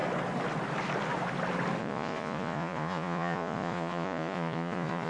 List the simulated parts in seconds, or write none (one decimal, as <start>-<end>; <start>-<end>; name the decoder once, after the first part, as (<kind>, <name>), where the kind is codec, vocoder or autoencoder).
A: 1.8-5.1 (vocoder, Vocos)